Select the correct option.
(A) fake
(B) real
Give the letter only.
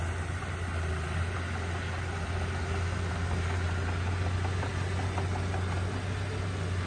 B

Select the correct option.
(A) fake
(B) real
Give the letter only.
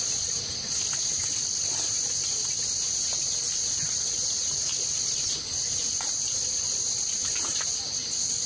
B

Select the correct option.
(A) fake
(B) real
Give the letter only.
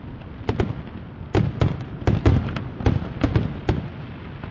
B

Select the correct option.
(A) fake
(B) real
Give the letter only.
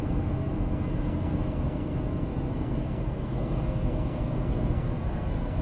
A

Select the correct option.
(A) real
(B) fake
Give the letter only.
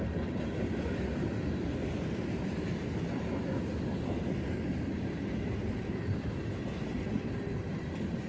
A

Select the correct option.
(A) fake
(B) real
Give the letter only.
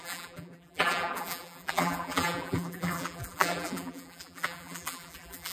A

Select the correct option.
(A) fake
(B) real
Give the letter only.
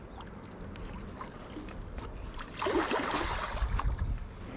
B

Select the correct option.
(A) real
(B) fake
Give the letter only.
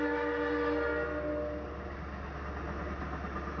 A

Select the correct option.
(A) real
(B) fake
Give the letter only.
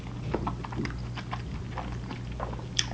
A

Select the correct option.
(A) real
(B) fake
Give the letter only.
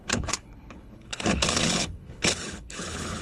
B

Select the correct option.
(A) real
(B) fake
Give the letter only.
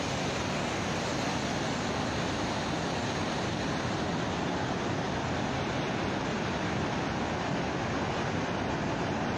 A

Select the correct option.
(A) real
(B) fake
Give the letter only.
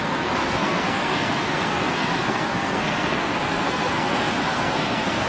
B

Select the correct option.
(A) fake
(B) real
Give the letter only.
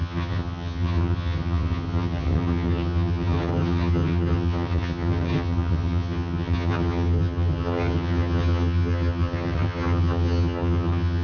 A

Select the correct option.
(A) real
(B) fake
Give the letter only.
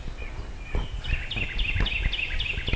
A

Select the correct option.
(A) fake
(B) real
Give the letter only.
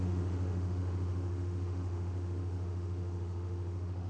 A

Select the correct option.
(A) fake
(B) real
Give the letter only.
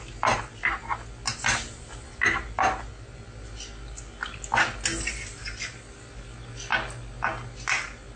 B